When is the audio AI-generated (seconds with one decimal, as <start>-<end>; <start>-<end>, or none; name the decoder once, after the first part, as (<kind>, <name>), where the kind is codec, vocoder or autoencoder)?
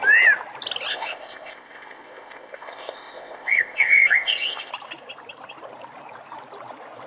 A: 0.9-4.7 (codec, ZipCodec)